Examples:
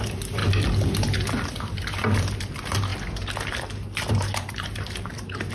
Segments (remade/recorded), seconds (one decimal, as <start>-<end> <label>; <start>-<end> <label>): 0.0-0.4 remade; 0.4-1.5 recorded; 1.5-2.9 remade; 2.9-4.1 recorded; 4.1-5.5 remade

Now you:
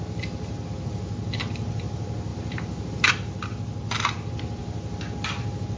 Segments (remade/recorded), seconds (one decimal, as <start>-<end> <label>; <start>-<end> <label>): 0.0-2.3 recorded; 2.3-3.1 remade; 3.1-5.8 recorded

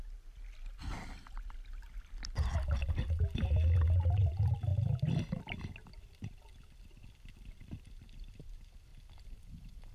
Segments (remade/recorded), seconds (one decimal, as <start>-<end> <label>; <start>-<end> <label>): 0.0-8.9 recorded; 8.9-9.9 remade

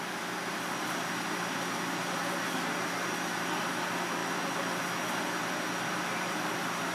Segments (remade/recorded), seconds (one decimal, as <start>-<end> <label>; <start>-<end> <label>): 0.0-6.9 recorded

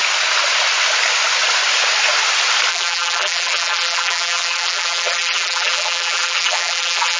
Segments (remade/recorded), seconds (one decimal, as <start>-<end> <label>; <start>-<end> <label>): 0.0-2.7 recorded; 2.7-7.2 remade